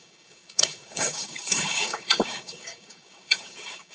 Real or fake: fake